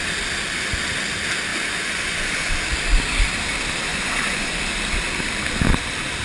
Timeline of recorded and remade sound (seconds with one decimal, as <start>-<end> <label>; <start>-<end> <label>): 0.0-1.5 recorded; 1.5-2.5 remade; 2.5-3.9 recorded; 3.9-4.5 remade; 4.5-6.2 recorded